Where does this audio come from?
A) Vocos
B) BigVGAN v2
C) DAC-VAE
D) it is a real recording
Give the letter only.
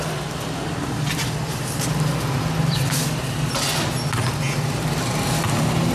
D